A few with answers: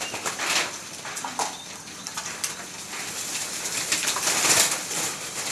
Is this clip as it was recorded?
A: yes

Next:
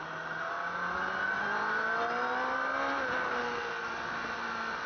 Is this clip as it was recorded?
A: yes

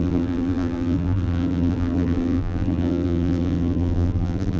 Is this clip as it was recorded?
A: no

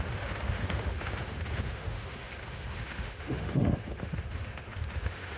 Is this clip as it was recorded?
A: no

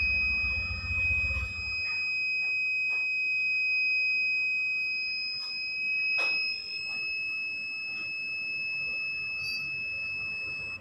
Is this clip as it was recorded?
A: yes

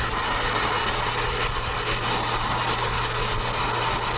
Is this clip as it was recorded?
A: yes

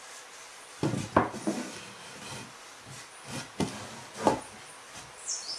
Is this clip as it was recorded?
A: yes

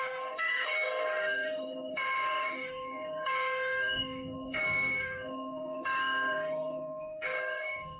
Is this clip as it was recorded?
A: no